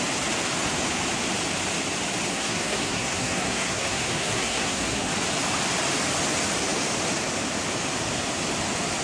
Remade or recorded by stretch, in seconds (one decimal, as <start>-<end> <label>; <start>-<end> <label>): 0.0-2.3 recorded; 2.3-5.1 remade; 5.1-9.0 recorded